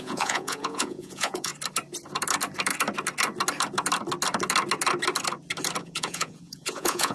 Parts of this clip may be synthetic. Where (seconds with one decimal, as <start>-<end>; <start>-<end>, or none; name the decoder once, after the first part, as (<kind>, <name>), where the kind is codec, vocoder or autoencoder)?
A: 0.0-1.5 (vocoder, Vocos); 5.8-7.1